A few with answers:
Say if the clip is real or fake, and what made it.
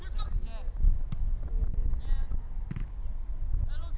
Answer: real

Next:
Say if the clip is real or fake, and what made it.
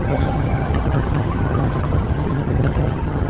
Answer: fake, vocoder, HiFi-GAN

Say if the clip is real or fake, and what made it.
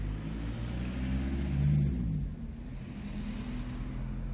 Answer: real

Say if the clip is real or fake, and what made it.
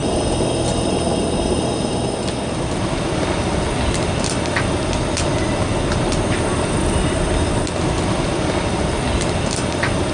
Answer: real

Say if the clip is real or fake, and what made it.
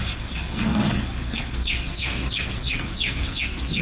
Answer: fake, codec, SNAC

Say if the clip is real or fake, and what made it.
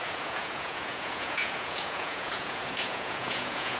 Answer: fake, vocoder, Vocos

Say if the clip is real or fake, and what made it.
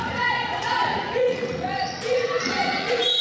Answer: fake, vocoder, Vocos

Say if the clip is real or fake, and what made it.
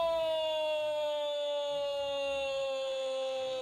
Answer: fake, codec, SNAC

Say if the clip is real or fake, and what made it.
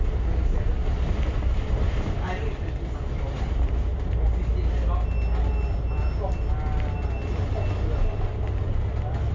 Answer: real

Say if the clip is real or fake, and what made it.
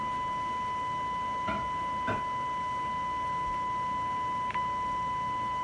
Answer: real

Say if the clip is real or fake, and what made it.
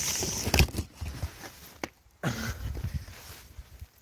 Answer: real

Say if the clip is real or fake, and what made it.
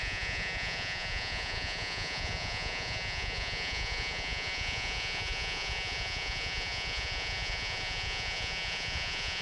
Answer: fake, vocoder, Vocos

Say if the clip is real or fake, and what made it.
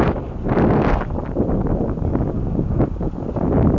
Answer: real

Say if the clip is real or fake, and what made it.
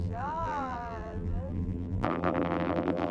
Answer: fake, vocoder, BigVGAN v2